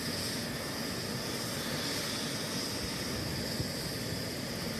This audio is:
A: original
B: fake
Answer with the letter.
A